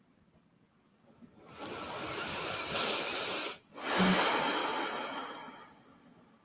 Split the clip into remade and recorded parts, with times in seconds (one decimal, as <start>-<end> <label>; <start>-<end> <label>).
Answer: 0.0-6.4 recorded